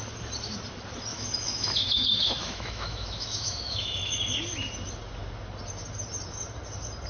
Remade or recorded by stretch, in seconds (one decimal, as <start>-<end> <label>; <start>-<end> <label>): 0.0-1.1 recorded; 1.1-4.4 remade; 4.4-7.1 recorded